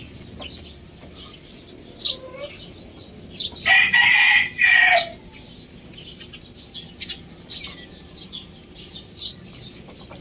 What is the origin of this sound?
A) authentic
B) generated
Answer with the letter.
A